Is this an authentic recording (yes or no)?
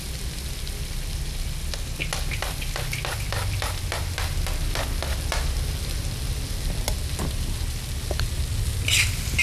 yes